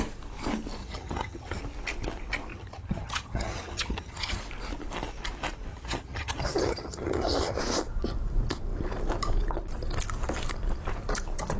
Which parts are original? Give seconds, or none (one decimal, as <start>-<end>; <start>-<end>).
0.0-0.8; 1.6-2.5; 4.4-5.7; 7.6-11.6